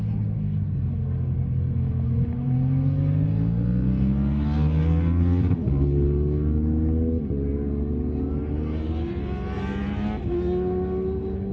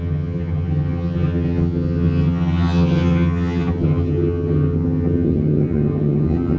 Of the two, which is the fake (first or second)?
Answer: second